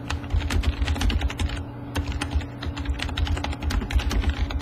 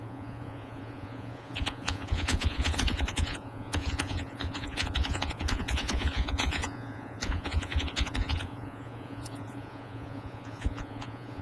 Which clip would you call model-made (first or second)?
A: second